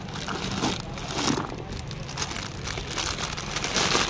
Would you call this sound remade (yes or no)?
no